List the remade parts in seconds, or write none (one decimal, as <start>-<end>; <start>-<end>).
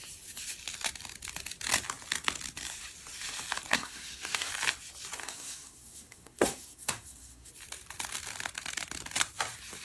3.7-4.5; 5.2-7.5